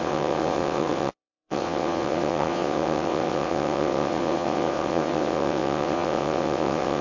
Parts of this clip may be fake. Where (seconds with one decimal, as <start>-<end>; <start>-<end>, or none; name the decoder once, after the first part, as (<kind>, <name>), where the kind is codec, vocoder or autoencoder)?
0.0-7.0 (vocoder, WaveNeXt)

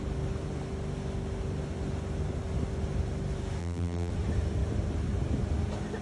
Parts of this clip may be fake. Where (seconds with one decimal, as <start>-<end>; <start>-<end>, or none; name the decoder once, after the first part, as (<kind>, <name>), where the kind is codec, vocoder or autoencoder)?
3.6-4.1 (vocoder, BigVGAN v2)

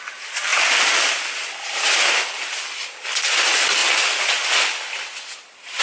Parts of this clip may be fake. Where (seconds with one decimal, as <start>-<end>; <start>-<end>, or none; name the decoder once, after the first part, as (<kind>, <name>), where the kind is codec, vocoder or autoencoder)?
none

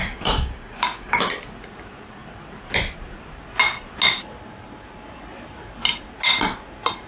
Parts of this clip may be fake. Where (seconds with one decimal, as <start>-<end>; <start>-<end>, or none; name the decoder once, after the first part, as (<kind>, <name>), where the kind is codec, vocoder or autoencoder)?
0.0-1.3 (codec, DAC)

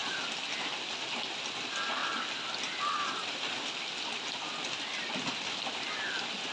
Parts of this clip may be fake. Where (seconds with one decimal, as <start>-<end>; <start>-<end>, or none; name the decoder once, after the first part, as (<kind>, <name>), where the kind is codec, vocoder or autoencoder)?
none